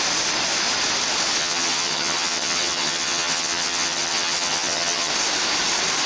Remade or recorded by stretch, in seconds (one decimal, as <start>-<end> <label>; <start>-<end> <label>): 0.0-1.4 recorded; 1.4-5.1 remade; 5.1-6.1 recorded